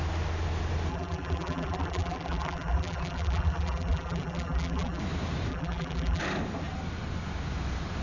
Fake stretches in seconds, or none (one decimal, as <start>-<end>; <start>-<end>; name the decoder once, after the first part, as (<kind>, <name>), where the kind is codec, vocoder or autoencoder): 0.9-5.0 (vocoder, BigVGAN v2); 5.5-6.2